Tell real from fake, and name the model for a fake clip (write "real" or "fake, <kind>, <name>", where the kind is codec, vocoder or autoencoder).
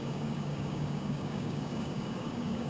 fake, codec, DAC